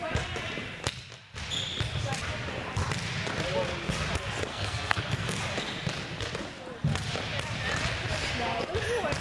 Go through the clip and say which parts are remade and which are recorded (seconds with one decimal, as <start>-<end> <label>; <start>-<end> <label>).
0.0-4.5 recorded; 4.5-5.4 remade; 5.4-9.2 recorded